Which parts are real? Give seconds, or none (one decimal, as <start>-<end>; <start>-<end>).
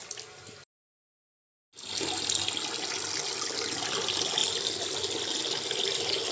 0.0-6.3